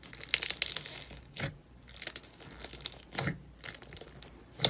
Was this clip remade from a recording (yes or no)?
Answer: no